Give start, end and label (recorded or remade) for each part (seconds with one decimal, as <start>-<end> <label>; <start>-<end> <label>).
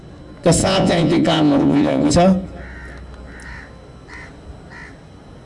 0.0-0.6 recorded; 0.6-2.1 remade; 2.1-5.5 recorded